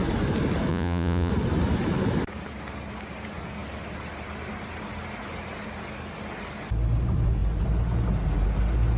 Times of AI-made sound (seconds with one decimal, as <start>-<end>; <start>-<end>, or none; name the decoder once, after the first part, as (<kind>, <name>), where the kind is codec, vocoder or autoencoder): 0.7-1.3 (vocoder, Vocos)